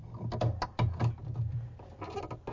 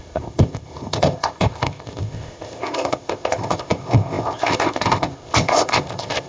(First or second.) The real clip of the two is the first